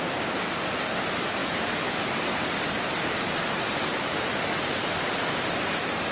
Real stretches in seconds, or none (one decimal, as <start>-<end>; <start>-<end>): 0.0-6.1

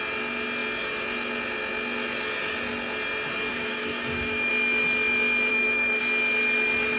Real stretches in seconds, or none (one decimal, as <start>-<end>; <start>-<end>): 0.0-3.5; 4.5-5.5; 6.0-7.0

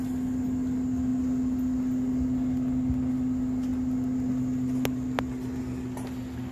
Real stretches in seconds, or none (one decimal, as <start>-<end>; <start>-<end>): 0.0-6.5